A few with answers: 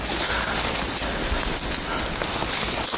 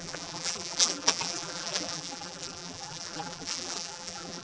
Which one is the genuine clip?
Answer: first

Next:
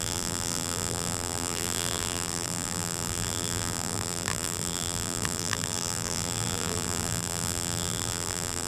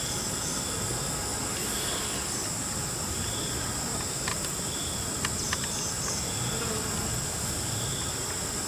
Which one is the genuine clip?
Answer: second